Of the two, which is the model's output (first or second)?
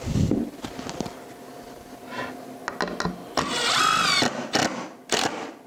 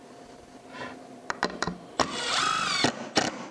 second